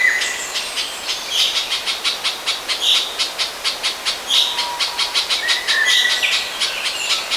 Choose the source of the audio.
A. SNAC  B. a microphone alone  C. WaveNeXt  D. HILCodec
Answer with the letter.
B